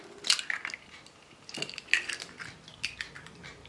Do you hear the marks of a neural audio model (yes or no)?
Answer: no